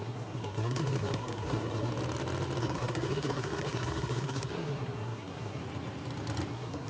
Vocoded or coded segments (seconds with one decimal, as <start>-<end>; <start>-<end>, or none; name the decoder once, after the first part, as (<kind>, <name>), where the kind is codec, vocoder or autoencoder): 0.0-1.9 (codec, SNAC); 2.6-5.6; 6.5-6.9